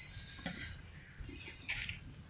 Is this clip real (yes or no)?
yes